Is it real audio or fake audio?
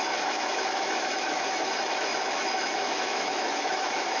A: fake